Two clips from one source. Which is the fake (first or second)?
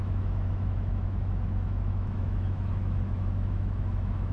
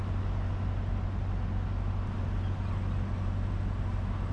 first